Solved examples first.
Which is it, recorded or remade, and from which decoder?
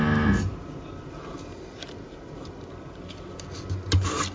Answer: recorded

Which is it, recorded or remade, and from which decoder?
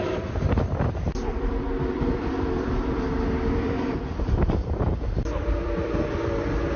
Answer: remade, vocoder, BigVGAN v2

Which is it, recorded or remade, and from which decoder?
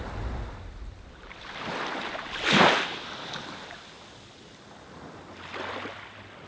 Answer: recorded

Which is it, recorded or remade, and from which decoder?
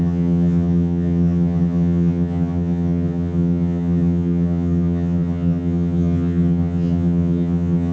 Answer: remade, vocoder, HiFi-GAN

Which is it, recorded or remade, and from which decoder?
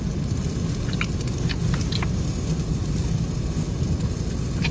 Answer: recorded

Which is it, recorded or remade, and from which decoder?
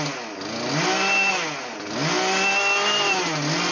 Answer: recorded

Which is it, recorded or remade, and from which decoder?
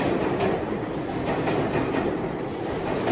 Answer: recorded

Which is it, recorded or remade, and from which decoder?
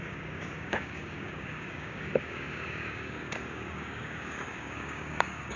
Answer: remade, codec, DAC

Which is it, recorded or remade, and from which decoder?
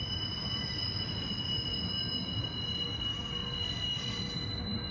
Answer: recorded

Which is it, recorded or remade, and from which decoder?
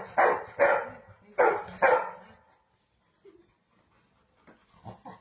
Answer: recorded